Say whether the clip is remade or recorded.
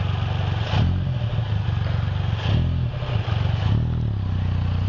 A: recorded